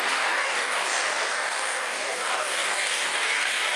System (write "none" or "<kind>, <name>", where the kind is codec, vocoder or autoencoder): codec, DAC